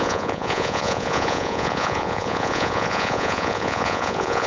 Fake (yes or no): yes